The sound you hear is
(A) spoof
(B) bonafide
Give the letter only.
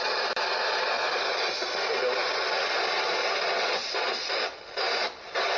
B